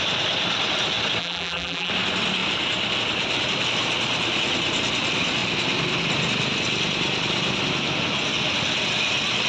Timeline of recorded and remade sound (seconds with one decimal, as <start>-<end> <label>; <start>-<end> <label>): 0.0-1.2 recorded; 1.2-1.9 remade; 1.9-9.5 recorded